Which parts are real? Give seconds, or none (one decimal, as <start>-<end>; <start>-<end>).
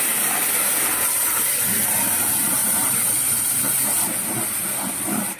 0.0-2.6; 3.6-5.4